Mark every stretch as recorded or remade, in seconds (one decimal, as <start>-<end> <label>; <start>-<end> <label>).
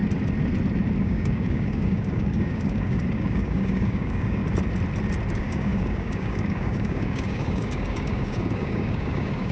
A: 0.0-1.0 recorded; 1.0-4.4 remade; 4.4-5.3 recorded; 5.3-9.5 remade